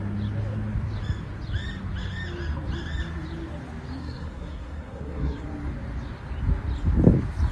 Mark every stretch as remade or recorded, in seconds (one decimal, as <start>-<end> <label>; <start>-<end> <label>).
0.0-4.0 recorded; 4.0-5.4 remade; 5.4-7.5 recorded